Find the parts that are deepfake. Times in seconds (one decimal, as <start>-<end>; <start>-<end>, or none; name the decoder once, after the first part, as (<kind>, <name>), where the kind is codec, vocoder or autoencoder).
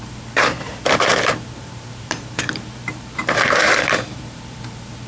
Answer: 0.0-5.1 (vocoder, BigVGAN v2)